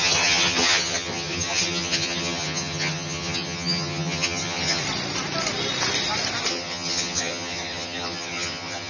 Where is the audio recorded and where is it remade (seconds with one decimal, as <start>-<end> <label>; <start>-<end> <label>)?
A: 0.0-4.8 remade; 4.8-6.5 recorded; 6.5-8.9 remade